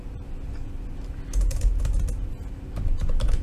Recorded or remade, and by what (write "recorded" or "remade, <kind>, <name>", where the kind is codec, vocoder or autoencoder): recorded